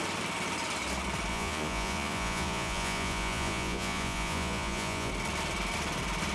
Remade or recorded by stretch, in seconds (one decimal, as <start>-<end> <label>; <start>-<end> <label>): 0.0-1.3 recorded; 1.3-5.1 remade; 5.1-6.3 recorded